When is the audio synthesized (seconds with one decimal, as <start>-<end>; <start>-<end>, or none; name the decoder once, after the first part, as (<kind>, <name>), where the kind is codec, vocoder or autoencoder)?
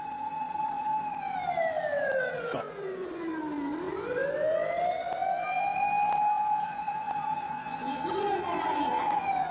0.0-0.9 (vocoder, Vocos); 2.0-3.3; 6.6-9.5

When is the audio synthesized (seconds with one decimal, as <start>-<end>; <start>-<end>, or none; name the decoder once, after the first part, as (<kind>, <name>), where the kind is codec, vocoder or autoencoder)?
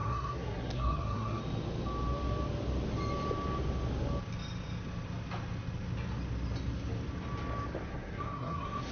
0.0-1.4 (codec, SNAC); 7.9-8.9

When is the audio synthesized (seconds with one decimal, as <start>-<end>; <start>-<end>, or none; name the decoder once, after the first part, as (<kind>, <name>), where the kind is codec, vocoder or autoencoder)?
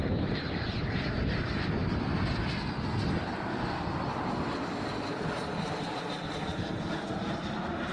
none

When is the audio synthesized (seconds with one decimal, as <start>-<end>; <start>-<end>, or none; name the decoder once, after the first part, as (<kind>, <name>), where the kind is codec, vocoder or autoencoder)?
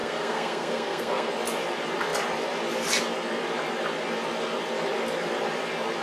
0.0-1.3 (codec, SNAC)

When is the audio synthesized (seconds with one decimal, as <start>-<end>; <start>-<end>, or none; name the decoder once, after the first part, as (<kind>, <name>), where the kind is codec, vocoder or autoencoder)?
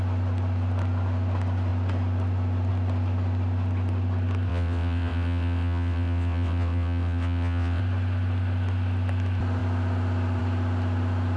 4.5-7.8 (vocoder, WaveNeXt)